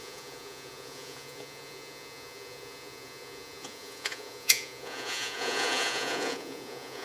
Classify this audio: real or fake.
fake